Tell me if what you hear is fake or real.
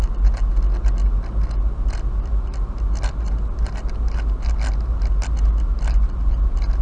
real